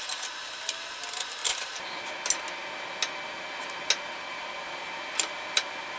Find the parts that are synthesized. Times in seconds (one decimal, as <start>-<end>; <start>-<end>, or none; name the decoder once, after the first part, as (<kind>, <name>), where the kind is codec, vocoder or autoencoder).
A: 0.0-1.4 (vocoder, BigVGAN v2); 4.3-6.0